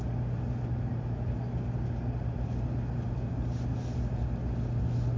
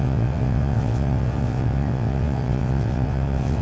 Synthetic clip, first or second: second